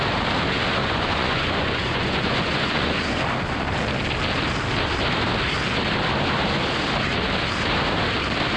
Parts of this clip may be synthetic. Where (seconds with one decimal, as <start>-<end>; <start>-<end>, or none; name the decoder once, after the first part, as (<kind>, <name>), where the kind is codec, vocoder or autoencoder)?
0.8-3.2 (vocoder, Vocos)